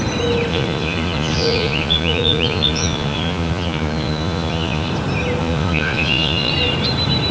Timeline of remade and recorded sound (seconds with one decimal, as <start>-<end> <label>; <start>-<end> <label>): 0.0-0.5 recorded; 0.5-4.9 remade; 4.9-5.4 recorded; 5.4-6.5 remade; 6.5-7.3 recorded